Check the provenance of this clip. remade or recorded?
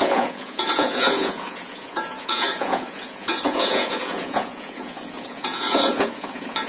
remade